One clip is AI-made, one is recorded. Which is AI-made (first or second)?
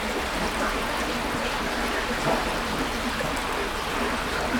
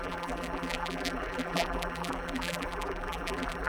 second